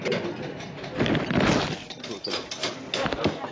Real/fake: real